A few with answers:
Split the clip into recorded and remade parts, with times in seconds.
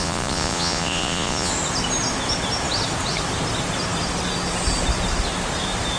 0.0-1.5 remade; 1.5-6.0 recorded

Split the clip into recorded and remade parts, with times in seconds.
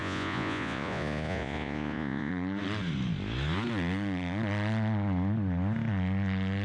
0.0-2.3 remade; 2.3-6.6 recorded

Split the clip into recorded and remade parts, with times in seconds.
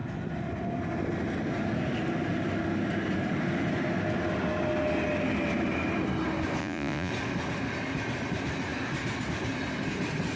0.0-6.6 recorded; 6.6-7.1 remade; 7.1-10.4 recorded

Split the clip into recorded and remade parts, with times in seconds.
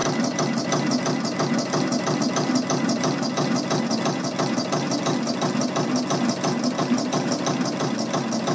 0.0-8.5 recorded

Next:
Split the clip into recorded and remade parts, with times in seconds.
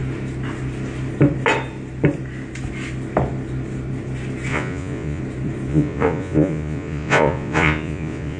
0.0-4.5 recorded; 4.5-5.2 remade; 5.2-5.7 recorded; 5.7-8.4 remade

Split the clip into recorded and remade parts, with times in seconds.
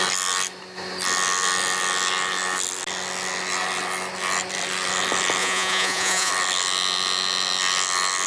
0.0-5.4 recorded; 5.4-6.3 remade; 6.3-8.3 recorded